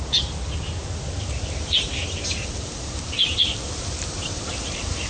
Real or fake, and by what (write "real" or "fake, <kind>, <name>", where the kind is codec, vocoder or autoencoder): real